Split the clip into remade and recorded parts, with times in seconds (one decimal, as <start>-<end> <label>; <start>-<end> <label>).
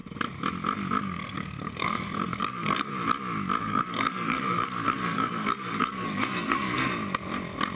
0.0-1.0 recorded; 1.0-2.9 remade; 2.9-3.6 recorded; 3.6-6.8 remade; 6.8-7.8 recorded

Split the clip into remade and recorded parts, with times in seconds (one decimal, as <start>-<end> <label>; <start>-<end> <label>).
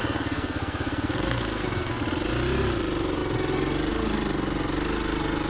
0.0-1.9 remade; 1.9-5.5 recorded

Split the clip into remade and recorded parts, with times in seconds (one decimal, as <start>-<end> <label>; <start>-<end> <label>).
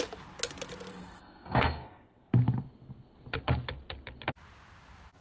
0.0-0.9 recorded; 0.9-2.3 remade; 2.3-5.2 recorded